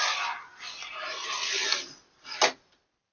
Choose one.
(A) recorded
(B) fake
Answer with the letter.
A